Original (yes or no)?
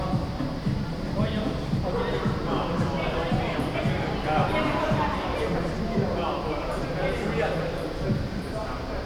no